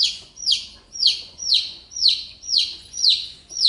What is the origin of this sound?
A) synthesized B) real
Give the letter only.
A